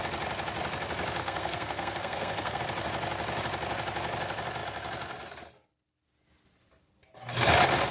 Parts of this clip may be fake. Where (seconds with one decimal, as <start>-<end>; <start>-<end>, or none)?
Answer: 1.2-2.6